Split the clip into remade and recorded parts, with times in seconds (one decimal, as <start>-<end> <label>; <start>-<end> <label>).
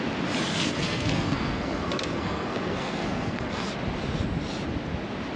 0.0-0.5 recorded; 0.5-3.7 remade; 3.7-5.4 recorded